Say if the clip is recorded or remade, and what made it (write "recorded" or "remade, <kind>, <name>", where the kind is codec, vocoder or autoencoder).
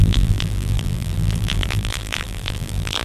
remade, vocoder, BigVGAN v2